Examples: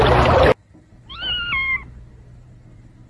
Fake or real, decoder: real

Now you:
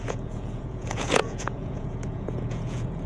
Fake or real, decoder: fake, vocoder, Vocos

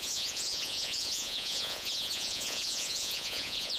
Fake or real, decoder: fake, vocoder, Vocos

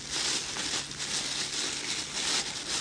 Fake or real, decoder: real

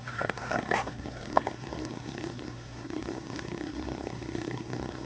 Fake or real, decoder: fake, codec, SNAC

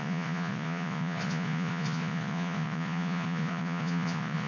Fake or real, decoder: fake, vocoder, Vocos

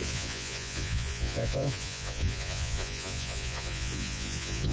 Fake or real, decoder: fake, vocoder, Vocos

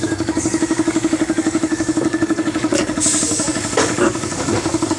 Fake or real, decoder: fake, codec, DAC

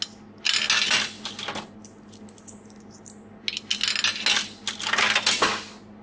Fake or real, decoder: real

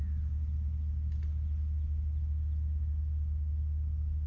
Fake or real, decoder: real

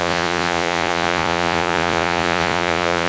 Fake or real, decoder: fake, vocoder, Vocos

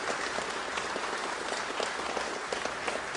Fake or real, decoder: real